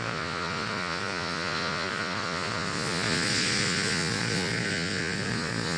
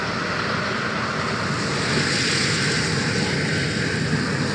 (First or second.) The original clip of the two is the second